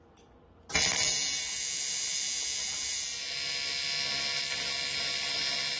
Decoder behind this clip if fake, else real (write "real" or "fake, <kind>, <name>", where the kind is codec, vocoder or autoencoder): real